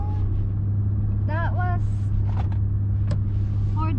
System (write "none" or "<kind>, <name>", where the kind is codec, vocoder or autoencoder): none